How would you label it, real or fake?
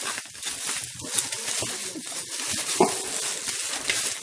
real